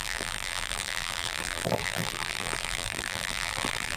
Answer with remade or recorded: remade